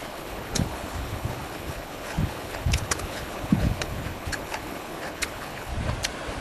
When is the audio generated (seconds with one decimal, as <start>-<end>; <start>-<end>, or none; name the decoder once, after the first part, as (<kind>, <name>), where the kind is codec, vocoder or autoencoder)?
0.0-5.7 (codec, HILCodec)